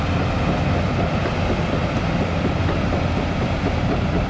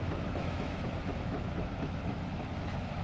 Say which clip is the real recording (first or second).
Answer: first